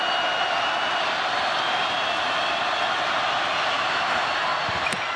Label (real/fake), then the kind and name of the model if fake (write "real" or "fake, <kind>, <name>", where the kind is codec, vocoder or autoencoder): real